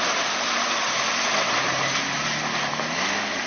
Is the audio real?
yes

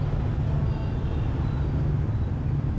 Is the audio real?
yes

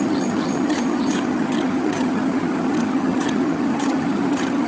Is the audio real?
no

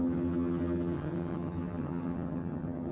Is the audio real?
no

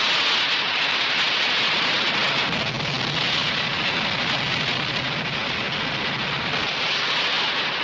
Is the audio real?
yes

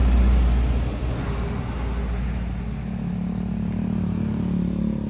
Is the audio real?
yes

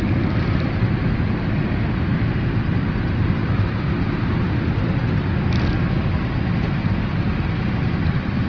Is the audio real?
yes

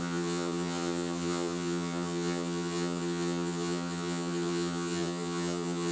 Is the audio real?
no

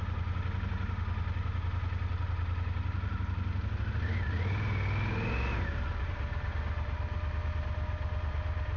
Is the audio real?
yes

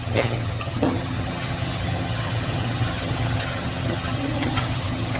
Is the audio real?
no